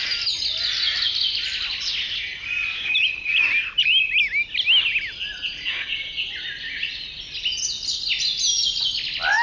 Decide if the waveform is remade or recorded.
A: recorded